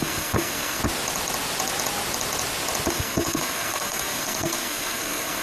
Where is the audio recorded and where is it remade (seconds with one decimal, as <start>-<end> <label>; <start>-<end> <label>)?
0.0-0.8 remade; 0.8-2.9 recorded; 2.9-5.4 remade